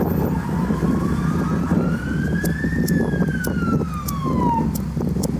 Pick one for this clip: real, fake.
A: real